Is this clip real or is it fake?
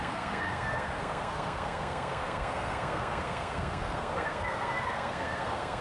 fake